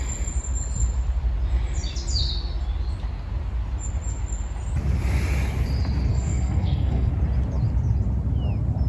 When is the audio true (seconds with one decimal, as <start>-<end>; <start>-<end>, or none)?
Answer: 0.0-6.1; 7.1-8.9